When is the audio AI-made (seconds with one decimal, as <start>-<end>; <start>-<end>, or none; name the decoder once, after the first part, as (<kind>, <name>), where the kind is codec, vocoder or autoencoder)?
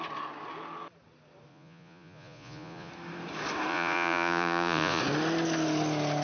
1.5-2.9 (vocoder, Vocos); 3.7-5.0